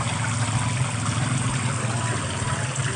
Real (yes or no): yes